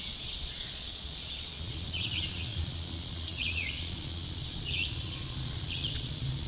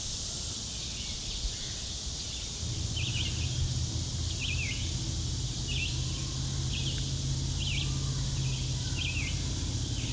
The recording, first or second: second